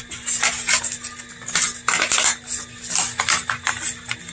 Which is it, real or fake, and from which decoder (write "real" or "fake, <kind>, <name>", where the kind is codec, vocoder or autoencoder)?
real